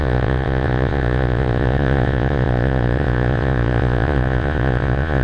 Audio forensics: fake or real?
fake